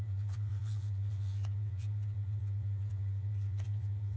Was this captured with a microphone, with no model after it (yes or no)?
no